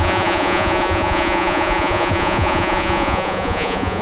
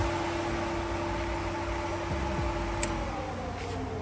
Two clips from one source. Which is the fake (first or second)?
first